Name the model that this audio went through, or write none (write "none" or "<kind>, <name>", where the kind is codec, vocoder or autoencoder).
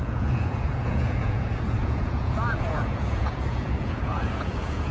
vocoder, Vocos